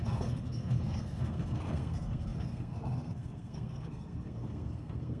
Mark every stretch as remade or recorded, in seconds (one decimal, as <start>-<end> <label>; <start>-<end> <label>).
0.0-5.2 remade